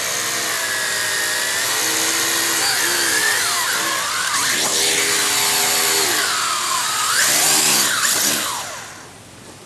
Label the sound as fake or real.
real